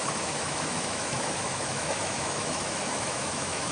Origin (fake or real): fake